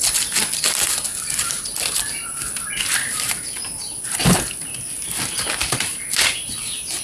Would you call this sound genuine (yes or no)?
yes